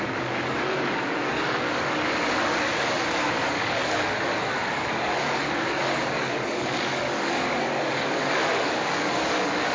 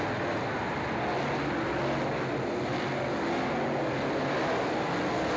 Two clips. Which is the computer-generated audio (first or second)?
first